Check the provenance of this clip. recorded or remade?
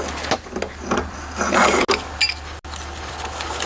recorded